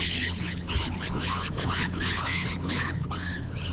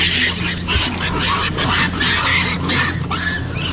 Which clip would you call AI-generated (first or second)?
first